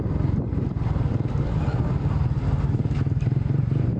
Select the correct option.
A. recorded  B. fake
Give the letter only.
A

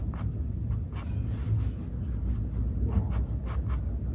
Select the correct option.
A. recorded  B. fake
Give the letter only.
A